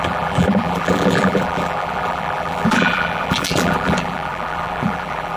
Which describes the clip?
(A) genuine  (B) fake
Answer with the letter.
B